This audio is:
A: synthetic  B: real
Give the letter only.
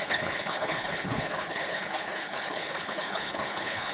A